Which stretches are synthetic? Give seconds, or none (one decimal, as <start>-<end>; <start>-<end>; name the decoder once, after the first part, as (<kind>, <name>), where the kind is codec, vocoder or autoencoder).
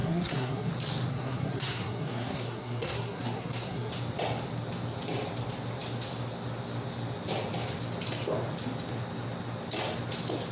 0.0-0.7 (codec, SNAC); 1.1-3.9